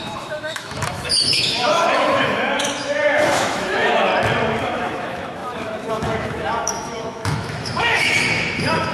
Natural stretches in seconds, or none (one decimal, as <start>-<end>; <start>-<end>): 4.1-4.6

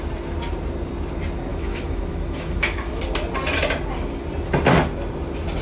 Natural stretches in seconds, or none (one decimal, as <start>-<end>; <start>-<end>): 0.0-1.5; 3.0-5.6